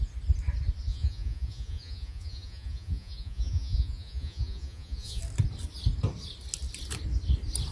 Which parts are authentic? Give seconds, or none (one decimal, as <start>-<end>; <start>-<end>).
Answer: 0.0-0.9; 5.2-7.7